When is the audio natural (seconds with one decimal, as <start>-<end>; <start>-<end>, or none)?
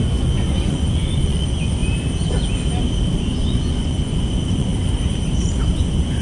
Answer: 1.8-3.2; 4.7-5.7